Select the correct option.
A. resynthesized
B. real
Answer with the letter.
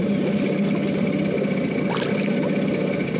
B